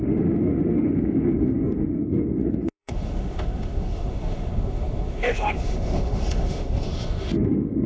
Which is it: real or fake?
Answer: fake